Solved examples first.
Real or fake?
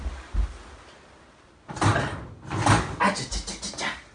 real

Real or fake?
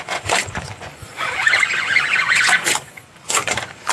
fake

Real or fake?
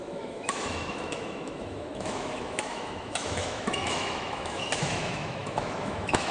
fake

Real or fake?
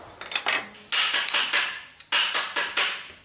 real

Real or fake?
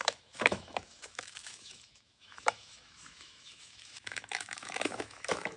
fake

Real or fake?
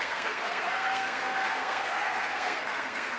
fake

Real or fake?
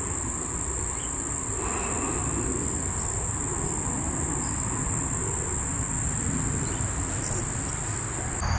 real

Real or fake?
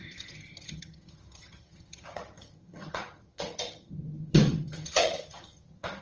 fake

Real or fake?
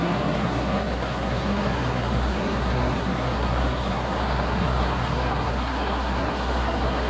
fake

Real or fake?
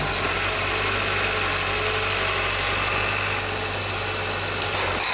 real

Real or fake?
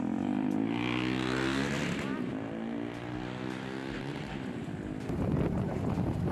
real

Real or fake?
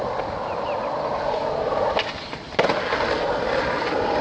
real